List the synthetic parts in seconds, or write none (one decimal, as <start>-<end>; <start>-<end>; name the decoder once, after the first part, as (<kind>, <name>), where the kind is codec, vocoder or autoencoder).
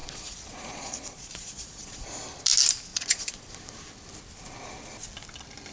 0.0-2.1 (vocoder, Vocos); 2.9-3.6